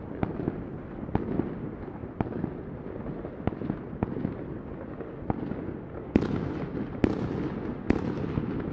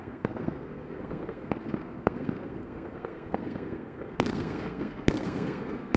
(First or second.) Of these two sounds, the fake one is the second